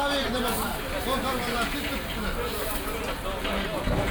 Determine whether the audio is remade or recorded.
recorded